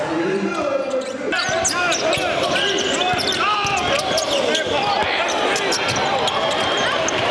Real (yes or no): yes